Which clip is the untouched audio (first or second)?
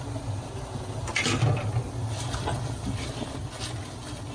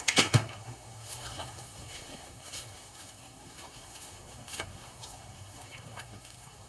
first